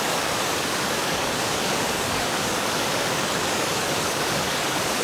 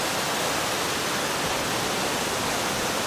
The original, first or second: second